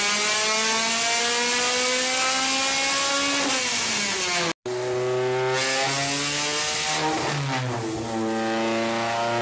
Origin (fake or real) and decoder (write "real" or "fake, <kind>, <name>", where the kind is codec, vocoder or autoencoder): real